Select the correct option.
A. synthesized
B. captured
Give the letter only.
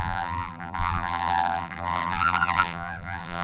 A